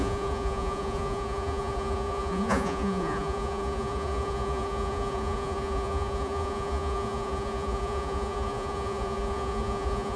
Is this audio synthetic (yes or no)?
yes